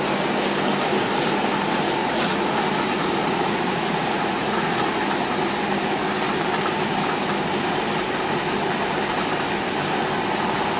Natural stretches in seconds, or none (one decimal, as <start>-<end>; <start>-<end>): 0.0-2.0; 2.6-3.2; 5.0-10.8